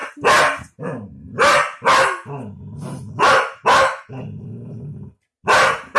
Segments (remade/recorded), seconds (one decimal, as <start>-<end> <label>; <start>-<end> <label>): 0.0-6.0 recorded